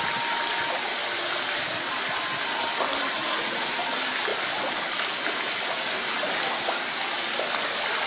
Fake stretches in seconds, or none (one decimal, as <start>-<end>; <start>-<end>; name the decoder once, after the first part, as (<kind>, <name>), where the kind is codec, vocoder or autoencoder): 3.2-3.9 (vocoder, Vocos)